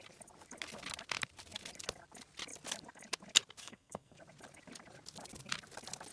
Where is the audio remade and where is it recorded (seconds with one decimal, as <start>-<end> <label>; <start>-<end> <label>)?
0.0-3.6 recorded; 3.6-4.2 remade; 4.2-6.1 recorded